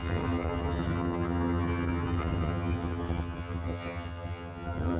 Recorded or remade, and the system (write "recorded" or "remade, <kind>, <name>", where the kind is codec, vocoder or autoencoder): remade, vocoder, HiFi-GAN